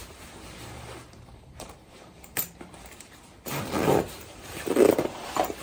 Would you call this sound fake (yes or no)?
yes